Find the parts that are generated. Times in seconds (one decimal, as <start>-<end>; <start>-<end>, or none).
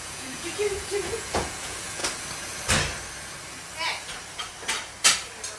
0.0-2.0